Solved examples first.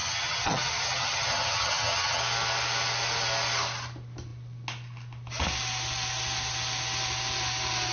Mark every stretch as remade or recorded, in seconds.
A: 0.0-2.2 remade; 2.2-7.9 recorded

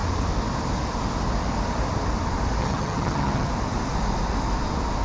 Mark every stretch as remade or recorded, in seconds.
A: 0.0-2.6 recorded; 2.6-3.5 remade; 3.5-5.0 recorded

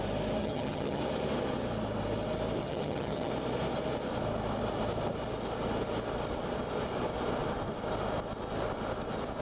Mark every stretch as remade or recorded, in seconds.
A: 0.0-0.4 recorded; 0.4-1.0 remade; 1.0-2.6 recorded; 2.6-3.3 remade; 3.3-9.4 recorded

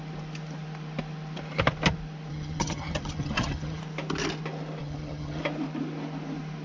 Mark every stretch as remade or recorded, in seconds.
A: 0.0-2.3 recorded; 2.3-3.8 remade; 3.8-4.8 recorded; 4.8-5.4 remade; 5.4-6.6 recorded